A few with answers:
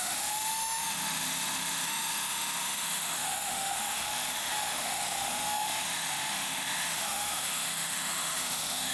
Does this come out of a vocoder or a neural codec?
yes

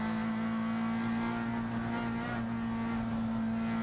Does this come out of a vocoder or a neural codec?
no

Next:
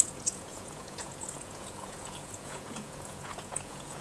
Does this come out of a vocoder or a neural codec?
yes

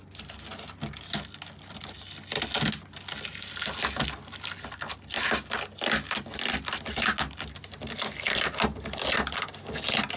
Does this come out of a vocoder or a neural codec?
no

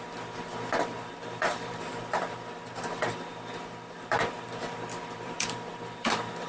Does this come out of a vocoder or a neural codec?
yes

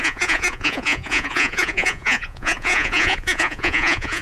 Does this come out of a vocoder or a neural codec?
yes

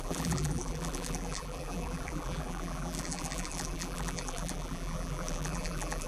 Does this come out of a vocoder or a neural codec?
yes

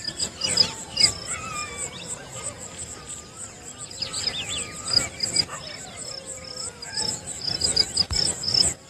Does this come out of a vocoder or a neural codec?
no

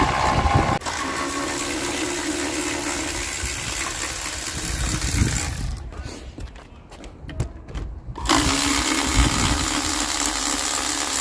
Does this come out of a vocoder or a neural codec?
no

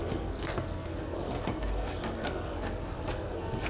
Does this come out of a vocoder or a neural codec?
yes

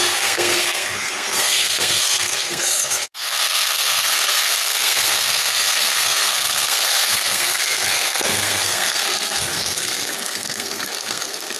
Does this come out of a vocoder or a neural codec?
yes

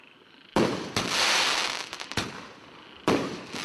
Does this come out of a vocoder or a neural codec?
no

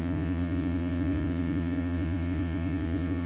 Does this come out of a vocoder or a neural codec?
yes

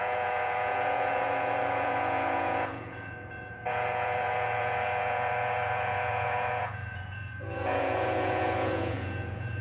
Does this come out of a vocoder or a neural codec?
yes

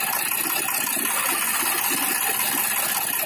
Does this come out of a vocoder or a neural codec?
no